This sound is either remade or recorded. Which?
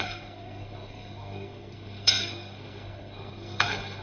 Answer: remade